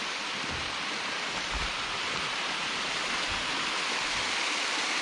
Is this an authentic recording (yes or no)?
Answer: yes